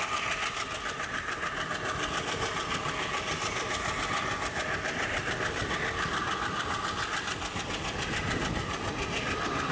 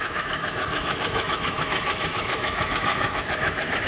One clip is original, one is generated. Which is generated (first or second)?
second